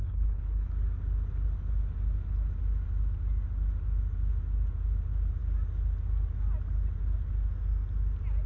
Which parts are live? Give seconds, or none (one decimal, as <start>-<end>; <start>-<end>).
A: 0.7-8.5